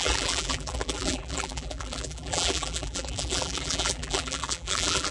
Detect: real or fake fake